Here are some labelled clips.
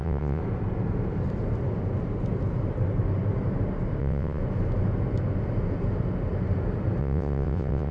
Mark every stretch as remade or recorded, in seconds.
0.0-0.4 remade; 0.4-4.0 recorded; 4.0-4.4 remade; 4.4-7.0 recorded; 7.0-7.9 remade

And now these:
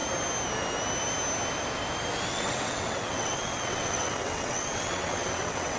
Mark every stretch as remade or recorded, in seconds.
0.0-2.3 recorded; 2.3-5.8 remade